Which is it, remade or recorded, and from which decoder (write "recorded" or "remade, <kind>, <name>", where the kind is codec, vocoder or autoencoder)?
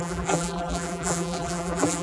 remade, vocoder, BigVGAN v2